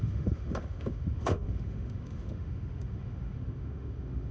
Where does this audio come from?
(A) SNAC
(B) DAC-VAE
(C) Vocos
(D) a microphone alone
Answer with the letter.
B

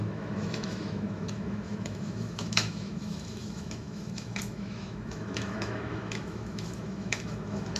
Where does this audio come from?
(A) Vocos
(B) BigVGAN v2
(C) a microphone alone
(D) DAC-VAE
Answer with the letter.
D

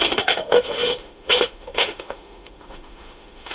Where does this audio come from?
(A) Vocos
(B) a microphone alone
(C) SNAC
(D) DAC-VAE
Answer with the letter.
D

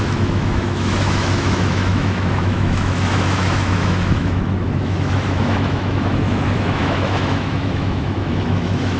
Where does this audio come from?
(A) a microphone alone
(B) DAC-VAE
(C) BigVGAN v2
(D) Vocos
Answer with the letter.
B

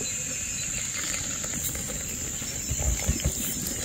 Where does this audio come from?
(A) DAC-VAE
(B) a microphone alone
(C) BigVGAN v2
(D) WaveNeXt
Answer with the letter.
B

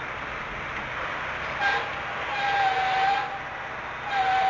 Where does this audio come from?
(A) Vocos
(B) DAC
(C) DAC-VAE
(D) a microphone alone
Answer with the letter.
D